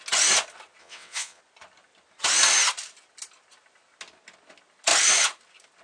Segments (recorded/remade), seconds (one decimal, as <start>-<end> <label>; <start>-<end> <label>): 0.0-0.8 recorded; 0.8-1.4 remade; 1.4-5.8 recorded